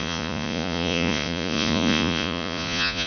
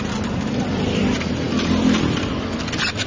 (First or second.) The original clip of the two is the second